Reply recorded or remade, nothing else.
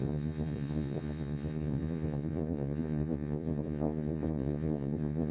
remade